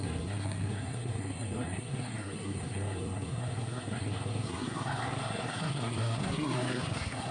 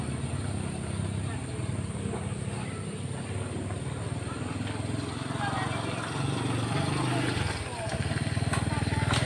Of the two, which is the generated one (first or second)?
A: first